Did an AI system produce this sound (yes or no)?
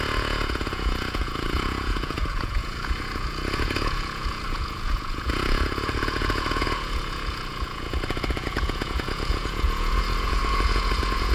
yes